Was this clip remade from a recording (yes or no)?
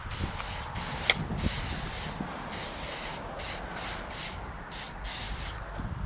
no